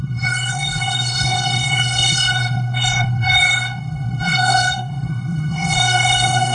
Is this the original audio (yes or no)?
no